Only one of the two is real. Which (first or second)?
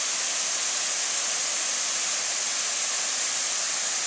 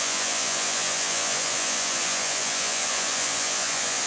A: first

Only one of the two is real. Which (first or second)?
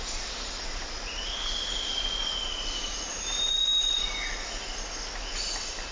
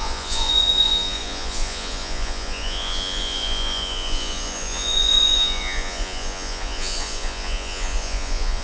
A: first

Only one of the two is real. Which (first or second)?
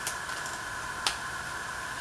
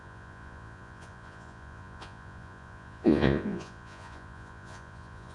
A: first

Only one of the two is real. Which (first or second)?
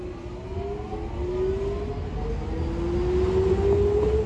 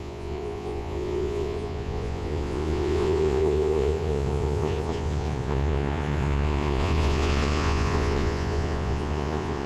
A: first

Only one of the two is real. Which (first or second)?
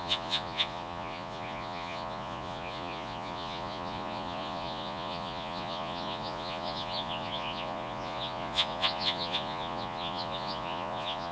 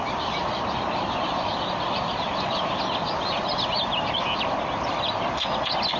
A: second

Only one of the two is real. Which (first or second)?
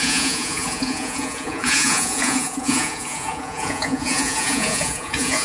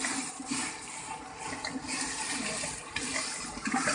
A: second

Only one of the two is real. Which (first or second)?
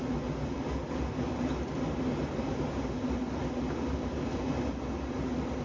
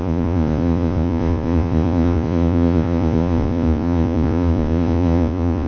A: first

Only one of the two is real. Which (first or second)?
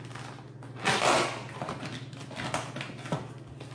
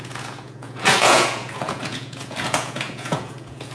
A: first